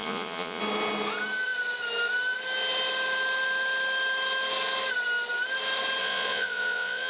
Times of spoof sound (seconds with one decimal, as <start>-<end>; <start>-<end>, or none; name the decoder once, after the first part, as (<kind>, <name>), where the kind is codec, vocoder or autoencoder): 0.0-0.6 (vocoder, Vocos); 6.0-7.1